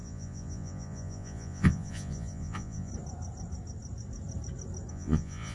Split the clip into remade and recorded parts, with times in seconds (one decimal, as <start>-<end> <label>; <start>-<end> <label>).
0.0-2.9 remade; 2.9-4.9 recorded; 4.9-5.5 remade